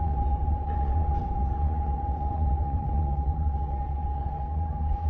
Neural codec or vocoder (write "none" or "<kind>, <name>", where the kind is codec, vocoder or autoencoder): vocoder, WaveNeXt